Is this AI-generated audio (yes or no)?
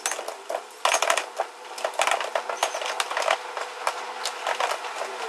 no